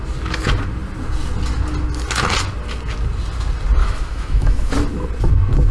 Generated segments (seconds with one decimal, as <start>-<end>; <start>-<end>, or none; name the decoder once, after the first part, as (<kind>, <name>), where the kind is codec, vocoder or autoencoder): 3.8-4.7 (autoencoder, DAC-VAE)